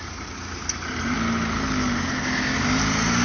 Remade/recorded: recorded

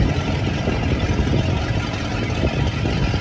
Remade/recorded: recorded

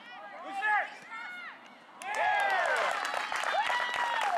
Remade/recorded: recorded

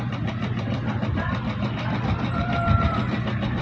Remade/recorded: remade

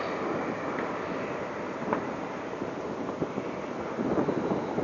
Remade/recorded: recorded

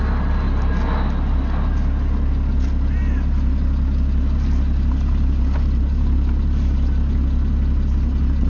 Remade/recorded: recorded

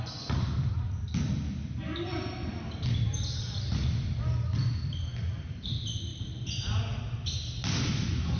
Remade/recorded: recorded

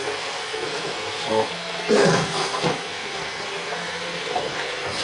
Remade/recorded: remade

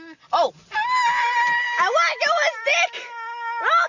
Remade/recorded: recorded